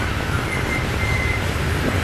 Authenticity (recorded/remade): recorded